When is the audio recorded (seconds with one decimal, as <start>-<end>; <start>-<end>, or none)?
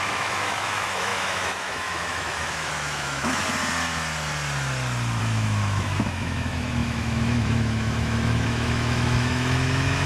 3.4-5.2